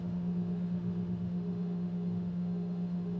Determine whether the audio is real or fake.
fake